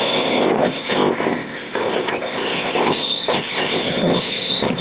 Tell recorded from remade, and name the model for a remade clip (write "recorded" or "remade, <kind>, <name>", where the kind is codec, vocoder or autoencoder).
remade, codec, ZipCodec